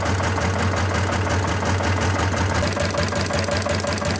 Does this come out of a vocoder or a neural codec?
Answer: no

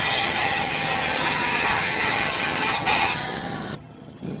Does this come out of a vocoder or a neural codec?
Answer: yes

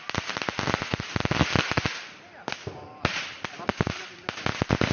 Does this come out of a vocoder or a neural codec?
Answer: no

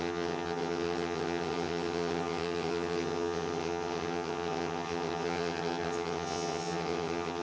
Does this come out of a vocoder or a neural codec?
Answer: yes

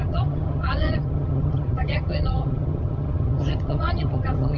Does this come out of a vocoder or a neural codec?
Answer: yes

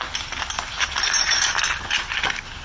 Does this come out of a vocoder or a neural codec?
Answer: no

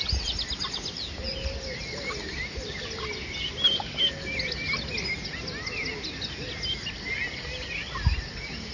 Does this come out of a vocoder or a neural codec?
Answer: no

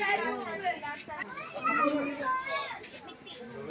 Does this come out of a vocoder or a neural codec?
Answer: no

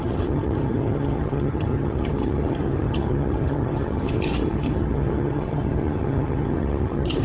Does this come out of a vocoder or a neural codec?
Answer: yes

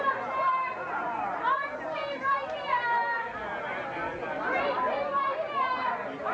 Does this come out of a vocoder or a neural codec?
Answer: no